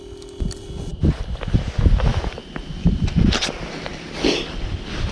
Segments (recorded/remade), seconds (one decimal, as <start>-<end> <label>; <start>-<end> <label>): 0.0-5.1 recorded